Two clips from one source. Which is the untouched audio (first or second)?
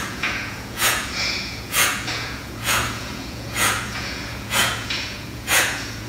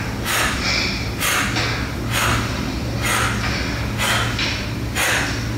second